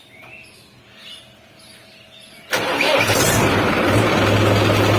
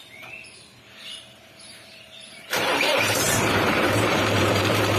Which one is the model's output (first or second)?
second